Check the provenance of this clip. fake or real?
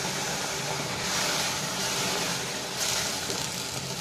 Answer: real